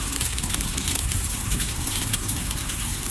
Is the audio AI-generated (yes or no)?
yes